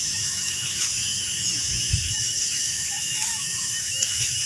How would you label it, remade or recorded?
remade